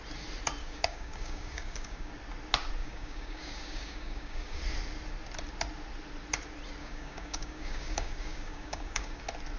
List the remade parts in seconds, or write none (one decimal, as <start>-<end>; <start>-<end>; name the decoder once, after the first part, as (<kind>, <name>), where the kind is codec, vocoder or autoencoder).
0.6-2.1 (codec, DAC); 2.8-4.6; 6.8-9.2